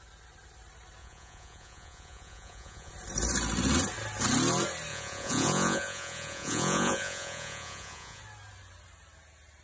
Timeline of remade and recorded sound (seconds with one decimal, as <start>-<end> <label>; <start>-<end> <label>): 0.0-1.0 recorded; 1.0-2.9 remade; 2.9-4.9 recorded; 4.9-8.2 remade; 8.2-9.6 recorded